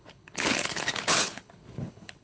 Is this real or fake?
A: fake